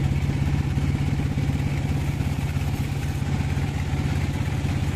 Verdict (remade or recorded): recorded